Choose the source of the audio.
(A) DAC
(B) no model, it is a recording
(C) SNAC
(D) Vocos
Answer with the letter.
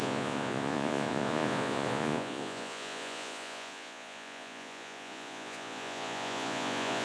D